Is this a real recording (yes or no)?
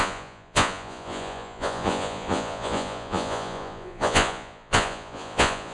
no